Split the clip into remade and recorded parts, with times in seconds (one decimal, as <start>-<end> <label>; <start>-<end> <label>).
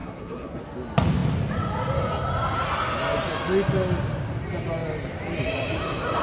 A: 0.0-0.6 remade; 0.6-6.2 recorded